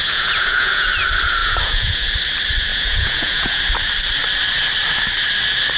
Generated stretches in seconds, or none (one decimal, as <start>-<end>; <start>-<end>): 0.0-0.9; 1.4-2.1; 2.7-3.6